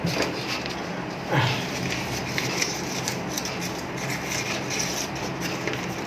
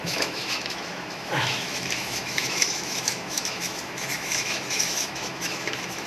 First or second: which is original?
first